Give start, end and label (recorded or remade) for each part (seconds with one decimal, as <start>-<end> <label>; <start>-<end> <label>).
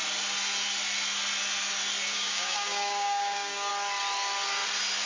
0.0-2.1 recorded; 2.1-3.7 remade; 3.7-5.1 recorded